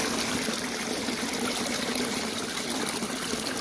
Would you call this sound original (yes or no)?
yes